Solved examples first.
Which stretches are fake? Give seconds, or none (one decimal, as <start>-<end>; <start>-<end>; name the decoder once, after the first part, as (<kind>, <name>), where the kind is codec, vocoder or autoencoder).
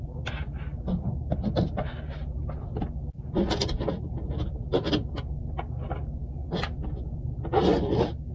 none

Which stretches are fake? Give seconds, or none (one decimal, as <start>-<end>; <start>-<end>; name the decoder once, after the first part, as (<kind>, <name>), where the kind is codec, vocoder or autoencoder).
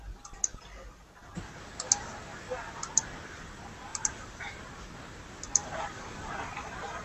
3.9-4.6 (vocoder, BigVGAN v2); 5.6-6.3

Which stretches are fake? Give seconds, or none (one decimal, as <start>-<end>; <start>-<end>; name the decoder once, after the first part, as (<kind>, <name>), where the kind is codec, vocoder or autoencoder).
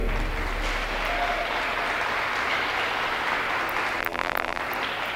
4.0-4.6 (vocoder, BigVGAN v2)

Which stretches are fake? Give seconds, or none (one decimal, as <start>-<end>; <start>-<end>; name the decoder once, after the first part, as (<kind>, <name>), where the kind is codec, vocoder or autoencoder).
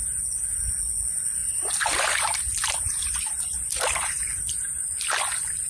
1.4-4.8 (vocoder, BigVGAN v2)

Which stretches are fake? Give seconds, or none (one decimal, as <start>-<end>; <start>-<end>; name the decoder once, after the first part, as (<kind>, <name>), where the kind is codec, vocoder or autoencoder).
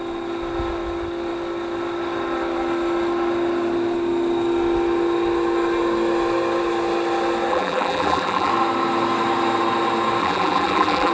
7.5-8.5 (vocoder, BigVGAN v2); 10.2-11.1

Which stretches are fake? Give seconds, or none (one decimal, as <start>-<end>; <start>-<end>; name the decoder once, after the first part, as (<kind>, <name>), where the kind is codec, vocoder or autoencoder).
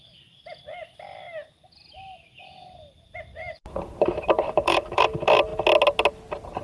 3.3-5.0 (vocoder, BigVGAN v2)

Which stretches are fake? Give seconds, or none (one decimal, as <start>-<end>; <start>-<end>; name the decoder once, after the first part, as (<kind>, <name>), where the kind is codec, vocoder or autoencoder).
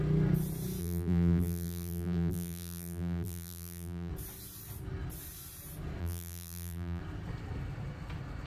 0.8-4.1 (vocoder, BigVGAN v2); 6.0-7.0